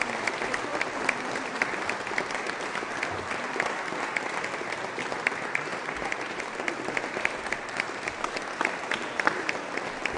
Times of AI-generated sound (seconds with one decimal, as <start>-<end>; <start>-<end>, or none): none